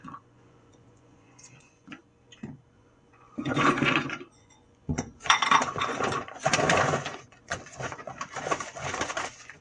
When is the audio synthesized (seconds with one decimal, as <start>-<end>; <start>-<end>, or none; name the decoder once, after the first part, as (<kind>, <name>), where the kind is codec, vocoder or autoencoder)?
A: 0.0-2.0 (vocoder, Vocos); 2.7-9.6